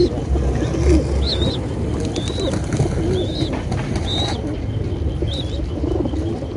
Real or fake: real